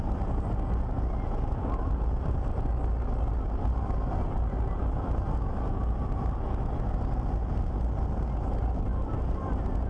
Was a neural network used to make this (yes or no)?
no